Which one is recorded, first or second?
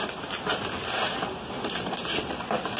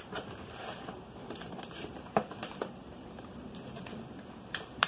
first